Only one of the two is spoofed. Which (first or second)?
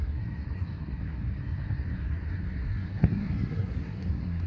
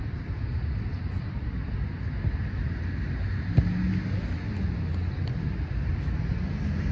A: first